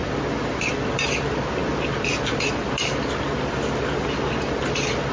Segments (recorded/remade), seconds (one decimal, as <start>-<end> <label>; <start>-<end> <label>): 0.0-5.1 recorded